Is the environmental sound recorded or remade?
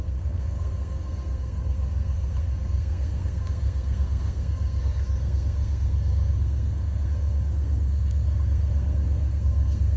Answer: remade